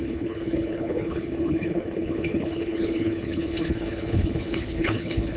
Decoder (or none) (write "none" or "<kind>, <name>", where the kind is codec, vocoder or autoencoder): codec, HILCodec